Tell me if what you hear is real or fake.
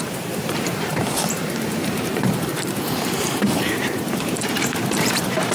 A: fake